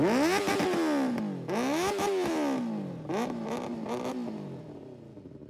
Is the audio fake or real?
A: real